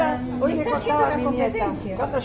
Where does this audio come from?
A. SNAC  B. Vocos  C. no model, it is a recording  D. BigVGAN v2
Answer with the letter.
C